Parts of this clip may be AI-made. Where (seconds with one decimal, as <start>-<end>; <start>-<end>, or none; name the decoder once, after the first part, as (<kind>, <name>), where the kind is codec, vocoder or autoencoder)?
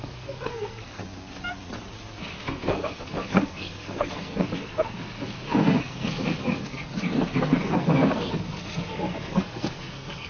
0.0-1.0 (codec, SNAC); 2.2-10.3